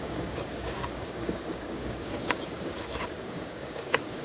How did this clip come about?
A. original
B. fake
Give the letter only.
B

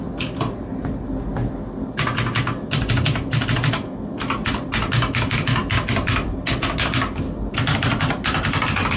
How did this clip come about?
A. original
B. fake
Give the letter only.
A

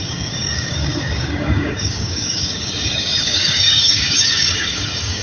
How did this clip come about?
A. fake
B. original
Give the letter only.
A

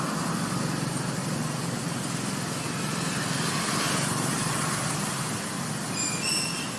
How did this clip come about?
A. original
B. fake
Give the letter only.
A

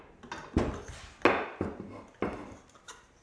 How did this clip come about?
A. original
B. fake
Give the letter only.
A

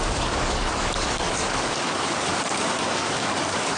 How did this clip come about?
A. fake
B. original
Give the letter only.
A